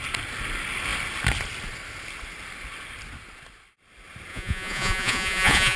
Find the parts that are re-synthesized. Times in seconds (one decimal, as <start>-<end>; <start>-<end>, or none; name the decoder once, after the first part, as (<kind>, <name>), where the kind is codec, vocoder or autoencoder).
4.3-5.8 (vocoder, Vocos)